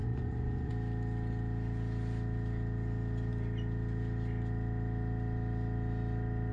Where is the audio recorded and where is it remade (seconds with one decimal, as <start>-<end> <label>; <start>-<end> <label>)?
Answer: 0.0-0.7 remade; 0.7-6.5 recorded